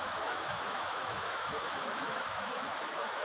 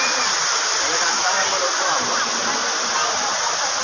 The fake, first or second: first